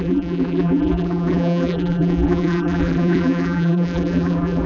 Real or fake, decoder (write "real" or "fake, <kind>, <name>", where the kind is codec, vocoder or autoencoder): fake, vocoder, BigVGAN v2